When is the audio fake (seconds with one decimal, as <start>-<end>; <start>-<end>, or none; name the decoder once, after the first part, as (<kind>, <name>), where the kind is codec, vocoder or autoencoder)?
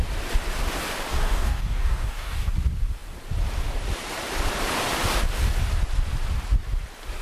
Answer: 1.1-2.5 (codec, DAC)